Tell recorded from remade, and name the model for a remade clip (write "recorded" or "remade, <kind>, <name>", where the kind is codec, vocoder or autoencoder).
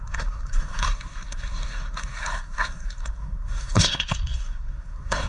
remade, codec, SNAC